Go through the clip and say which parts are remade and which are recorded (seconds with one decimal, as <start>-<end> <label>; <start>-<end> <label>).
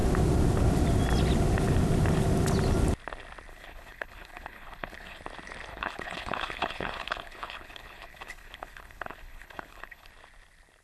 0.0-3.5 recorded; 3.5-5.2 remade; 5.2-5.7 recorded; 5.7-10.1 remade; 10.1-10.8 recorded